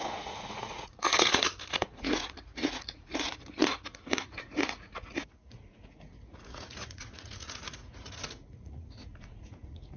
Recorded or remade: remade